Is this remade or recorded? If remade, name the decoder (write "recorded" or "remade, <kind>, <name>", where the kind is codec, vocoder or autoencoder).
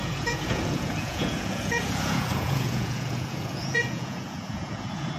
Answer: remade, vocoder, Vocos